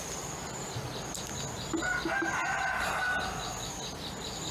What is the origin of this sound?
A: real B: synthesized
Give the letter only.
A